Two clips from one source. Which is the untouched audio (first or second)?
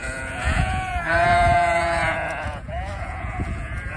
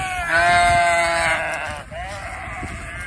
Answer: second